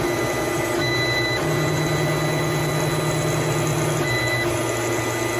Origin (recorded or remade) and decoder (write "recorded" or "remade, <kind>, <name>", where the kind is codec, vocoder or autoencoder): recorded